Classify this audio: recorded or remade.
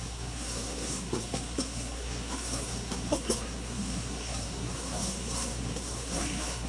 remade